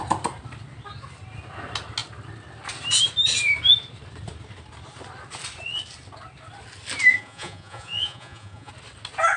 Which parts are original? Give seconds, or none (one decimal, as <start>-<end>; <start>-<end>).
0.0-7.1; 8.7-9.4